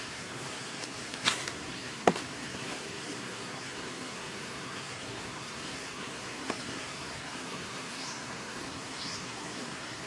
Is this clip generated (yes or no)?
yes